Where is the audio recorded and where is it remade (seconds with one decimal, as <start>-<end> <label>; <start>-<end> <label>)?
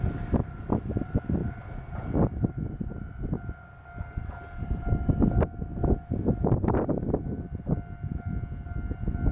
0.0-9.3 recorded